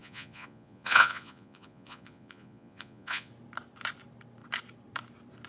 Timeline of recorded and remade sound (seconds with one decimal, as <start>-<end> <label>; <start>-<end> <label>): 0.0-3.3 remade; 3.3-5.5 recorded